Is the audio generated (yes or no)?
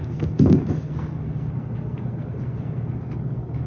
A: yes